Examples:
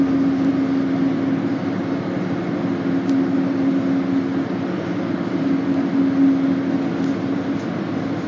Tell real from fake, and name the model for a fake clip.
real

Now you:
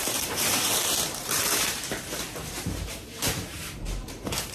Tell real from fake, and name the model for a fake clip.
fake, vocoder, BigVGAN v2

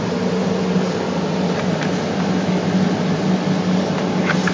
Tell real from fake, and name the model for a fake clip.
real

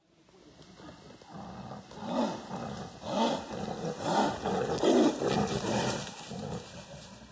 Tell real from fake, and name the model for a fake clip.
real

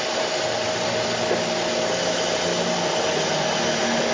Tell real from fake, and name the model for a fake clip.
real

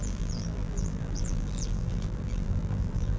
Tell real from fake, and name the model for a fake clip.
fake, vocoder, BigVGAN v2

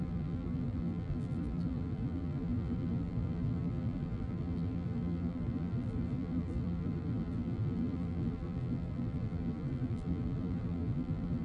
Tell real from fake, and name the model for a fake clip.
fake, vocoder, BigVGAN v2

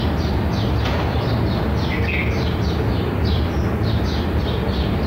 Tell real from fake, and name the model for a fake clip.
real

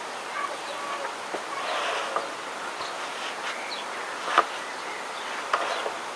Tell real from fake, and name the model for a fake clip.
real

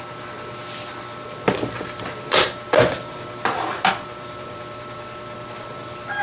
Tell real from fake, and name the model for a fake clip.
fake, vocoder, BigVGAN v2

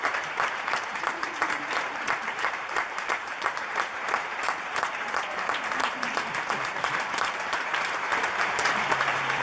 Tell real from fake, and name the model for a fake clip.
fake, vocoder, BigVGAN v2